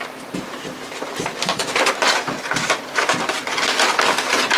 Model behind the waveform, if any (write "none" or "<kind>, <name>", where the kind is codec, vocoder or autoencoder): none